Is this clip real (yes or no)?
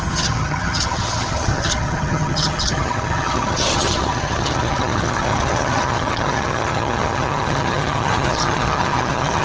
no